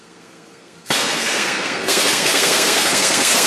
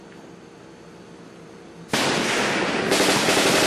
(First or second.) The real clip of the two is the second